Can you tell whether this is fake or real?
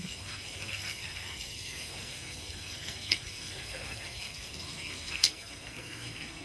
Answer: fake